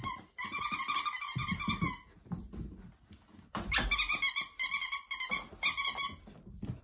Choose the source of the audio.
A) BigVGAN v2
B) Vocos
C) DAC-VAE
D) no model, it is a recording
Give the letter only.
D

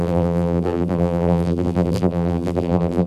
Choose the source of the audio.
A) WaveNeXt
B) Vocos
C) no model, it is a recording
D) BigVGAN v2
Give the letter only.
D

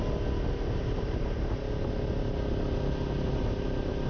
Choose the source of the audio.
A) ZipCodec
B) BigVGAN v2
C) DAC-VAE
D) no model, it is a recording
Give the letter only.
D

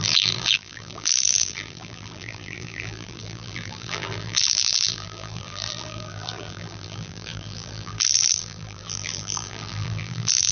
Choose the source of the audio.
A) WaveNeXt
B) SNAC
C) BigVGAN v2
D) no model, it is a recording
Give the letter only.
C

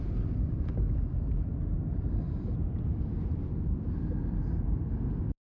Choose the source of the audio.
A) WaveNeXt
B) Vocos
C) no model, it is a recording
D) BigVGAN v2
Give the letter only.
D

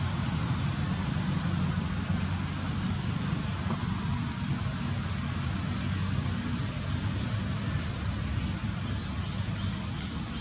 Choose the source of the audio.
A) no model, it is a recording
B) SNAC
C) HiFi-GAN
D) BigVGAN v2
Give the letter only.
A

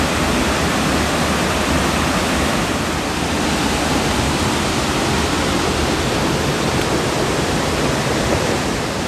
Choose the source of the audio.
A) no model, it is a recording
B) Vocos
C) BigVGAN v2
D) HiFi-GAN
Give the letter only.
C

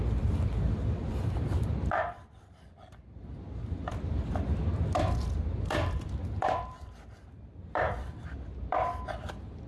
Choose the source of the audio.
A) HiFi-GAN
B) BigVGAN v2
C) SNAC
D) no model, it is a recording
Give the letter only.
B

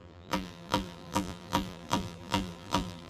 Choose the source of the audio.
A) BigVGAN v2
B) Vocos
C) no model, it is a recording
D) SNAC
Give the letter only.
A